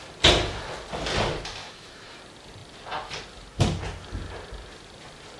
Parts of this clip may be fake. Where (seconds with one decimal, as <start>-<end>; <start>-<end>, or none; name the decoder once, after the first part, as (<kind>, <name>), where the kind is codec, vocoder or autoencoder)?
1.6-2.2 (autoencoder, DAC-VAE)